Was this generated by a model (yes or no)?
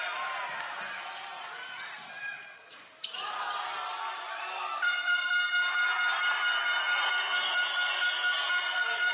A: no